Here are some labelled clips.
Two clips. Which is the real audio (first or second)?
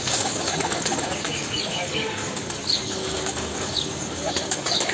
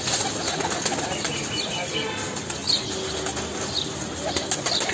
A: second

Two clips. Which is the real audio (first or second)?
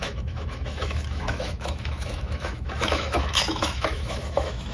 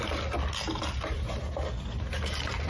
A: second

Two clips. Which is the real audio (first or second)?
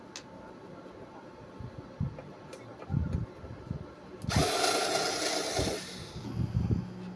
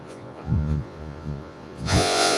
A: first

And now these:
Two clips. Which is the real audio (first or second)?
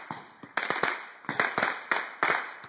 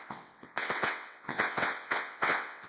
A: first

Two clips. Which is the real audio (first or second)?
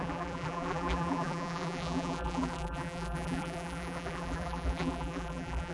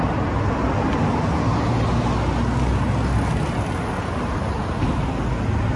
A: second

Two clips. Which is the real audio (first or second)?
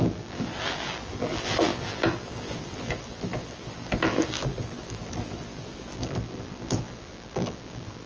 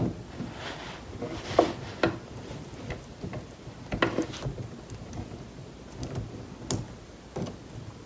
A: second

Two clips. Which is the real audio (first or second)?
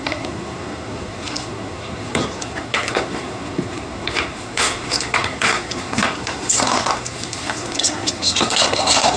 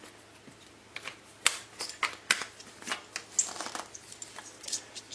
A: second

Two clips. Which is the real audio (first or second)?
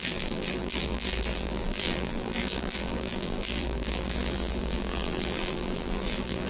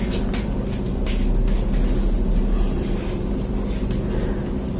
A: second